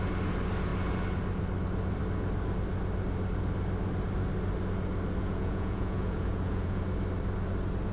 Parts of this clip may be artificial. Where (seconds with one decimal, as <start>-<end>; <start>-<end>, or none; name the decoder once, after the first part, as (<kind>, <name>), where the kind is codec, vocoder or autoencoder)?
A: 5.2-6.8 (vocoder, Vocos)